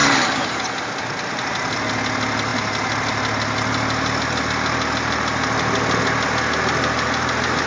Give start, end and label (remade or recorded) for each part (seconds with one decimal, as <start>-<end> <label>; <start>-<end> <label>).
0.0-7.7 recorded